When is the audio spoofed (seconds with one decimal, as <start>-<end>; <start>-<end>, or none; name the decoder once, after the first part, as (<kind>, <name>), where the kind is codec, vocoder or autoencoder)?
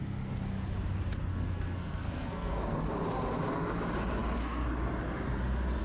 1.3-2.8 (codec, SNAC)